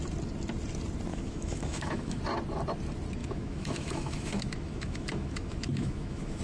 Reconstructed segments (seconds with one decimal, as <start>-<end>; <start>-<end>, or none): 1.1-2.2; 3.2-6.4